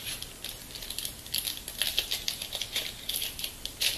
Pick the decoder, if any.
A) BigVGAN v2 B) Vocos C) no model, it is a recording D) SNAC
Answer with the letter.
C